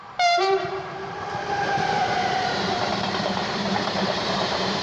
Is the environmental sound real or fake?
fake